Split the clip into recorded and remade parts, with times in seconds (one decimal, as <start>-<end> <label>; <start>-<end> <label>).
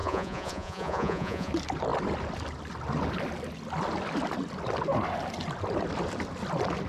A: 0.0-1.5 remade; 1.5-6.9 recorded